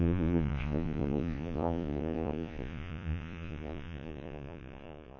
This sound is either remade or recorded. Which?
remade